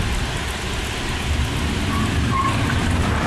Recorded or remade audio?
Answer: recorded